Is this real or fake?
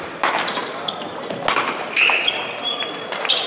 real